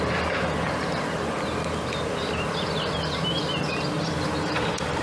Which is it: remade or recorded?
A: recorded